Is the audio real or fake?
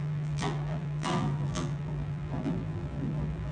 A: fake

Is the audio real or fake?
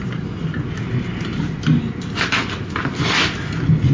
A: real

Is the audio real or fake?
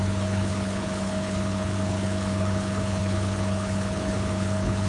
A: fake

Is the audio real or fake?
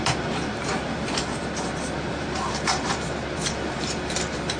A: fake